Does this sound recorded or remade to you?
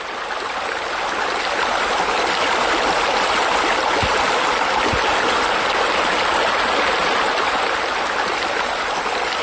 recorded